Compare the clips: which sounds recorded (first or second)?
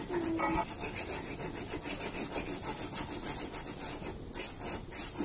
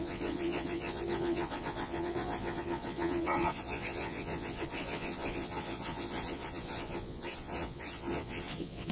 first